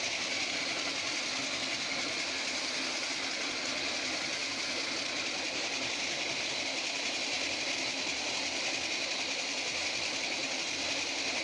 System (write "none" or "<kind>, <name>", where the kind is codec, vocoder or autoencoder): none